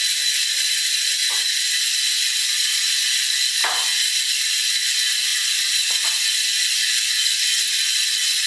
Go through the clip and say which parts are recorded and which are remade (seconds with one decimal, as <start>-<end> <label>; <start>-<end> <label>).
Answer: 0.0-0.4 recorded; 0.4-1.8 remade; 1.8-5.3 recorded; 5.3-6.4 remade; 6.4-8.5 recorded